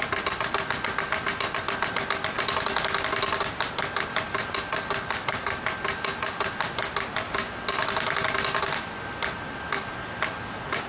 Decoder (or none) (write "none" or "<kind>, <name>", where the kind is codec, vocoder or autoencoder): none